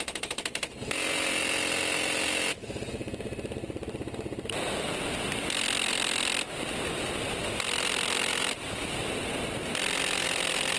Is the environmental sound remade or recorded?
recorded